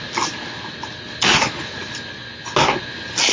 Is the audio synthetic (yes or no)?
no